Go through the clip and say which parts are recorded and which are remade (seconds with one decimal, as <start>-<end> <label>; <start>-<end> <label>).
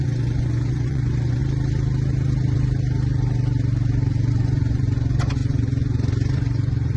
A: 0.0-1.4 remade; 1.4-4.3 recorded; 4.3-7.0 remade